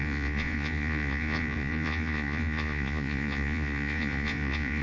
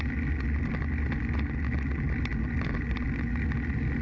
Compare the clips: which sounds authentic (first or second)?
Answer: second